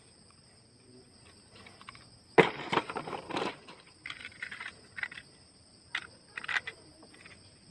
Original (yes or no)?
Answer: no